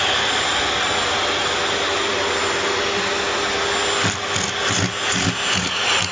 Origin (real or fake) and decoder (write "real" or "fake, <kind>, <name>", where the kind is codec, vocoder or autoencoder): real